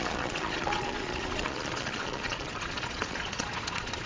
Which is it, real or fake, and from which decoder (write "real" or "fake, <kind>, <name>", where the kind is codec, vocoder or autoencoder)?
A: fake, vocoder, Vocos